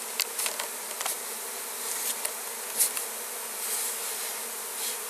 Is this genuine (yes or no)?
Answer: yes